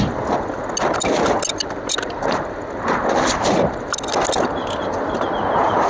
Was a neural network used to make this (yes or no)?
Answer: no